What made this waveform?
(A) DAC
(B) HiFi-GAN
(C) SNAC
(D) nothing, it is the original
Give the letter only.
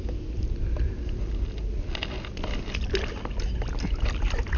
D